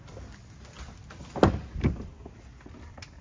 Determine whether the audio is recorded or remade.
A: recorded